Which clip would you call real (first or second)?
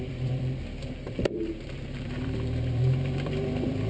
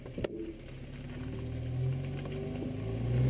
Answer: second